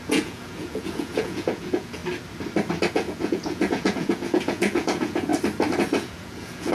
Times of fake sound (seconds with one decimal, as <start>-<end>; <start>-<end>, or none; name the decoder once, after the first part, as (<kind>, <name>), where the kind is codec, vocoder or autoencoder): 0.0-2.0 (vocoder, Vocos); 2.9-5.3; 6.0-6.7